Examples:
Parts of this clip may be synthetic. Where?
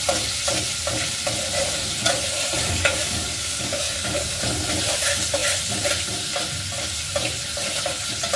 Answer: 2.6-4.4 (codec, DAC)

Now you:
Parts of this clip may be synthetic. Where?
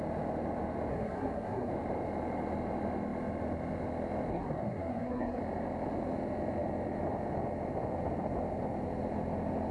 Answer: 0.9-1.7 (codec, SNAC); 4.3-5.4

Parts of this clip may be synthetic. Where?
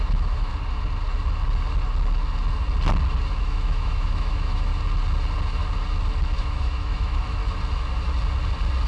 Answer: 0.0-0.5 (autoencoder, DAC-VAE); 3.4-4.7; 6.4-7.4